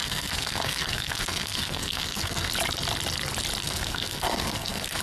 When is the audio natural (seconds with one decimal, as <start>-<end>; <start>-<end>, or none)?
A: 2.5-3.6